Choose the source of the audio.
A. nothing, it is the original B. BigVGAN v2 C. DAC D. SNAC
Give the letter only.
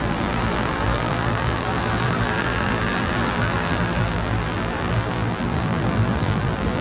B